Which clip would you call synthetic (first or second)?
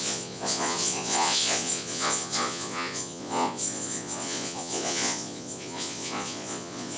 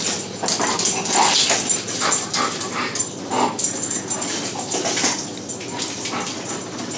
first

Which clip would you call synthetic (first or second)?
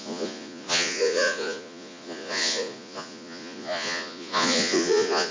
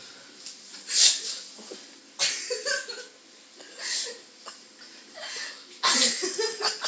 first